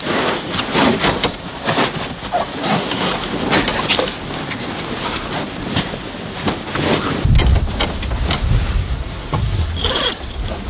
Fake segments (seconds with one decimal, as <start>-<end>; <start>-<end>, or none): 2.6-3.1; 8.9-9.7